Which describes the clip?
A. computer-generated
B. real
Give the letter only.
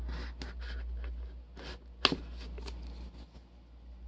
B